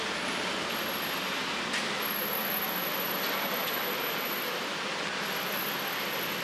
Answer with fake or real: real